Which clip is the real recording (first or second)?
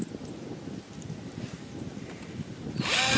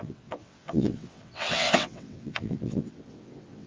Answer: first